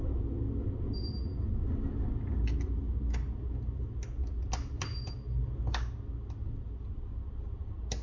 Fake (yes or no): no